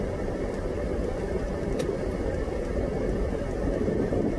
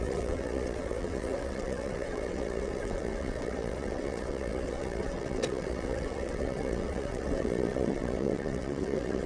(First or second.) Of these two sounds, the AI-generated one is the second